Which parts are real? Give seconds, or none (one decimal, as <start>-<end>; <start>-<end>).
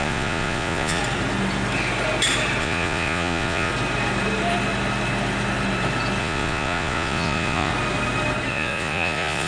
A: 1.0-2.6; 3.7-6.2; 7.7-8.5